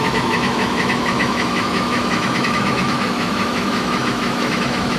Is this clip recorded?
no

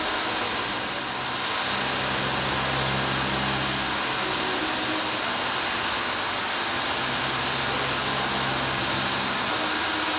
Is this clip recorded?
yes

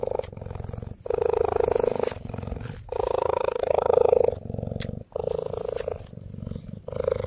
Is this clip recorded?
yes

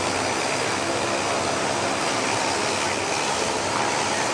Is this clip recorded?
yes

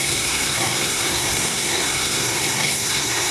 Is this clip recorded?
no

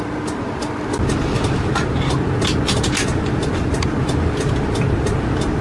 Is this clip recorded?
yes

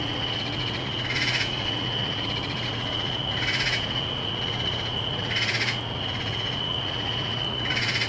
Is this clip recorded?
no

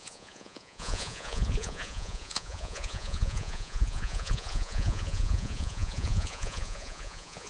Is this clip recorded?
no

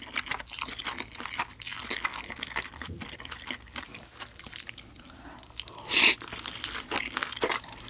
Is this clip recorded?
yes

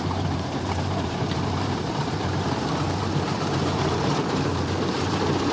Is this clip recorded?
no